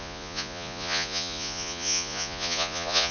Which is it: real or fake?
fake